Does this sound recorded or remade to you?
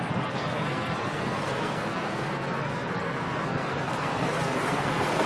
remade